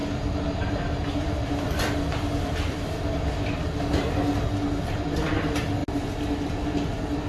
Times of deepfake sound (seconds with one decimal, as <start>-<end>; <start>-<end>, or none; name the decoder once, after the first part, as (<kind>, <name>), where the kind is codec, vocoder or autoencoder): 0.0-3.8 (vocoder, BigVGAN v2)